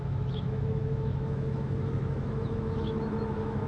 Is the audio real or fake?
fake